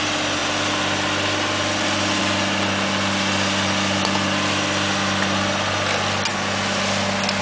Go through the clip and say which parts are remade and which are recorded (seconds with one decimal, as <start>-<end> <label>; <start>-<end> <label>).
0.0-7.4 recorded